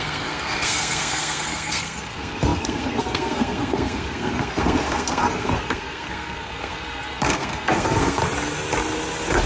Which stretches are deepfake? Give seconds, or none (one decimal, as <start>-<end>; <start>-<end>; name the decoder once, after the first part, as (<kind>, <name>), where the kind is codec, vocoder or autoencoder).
0.0-8.2 (codec, SNAC)